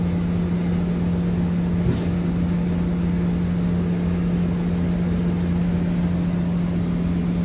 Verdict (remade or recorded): recorded